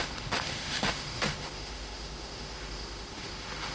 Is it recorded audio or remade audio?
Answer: remade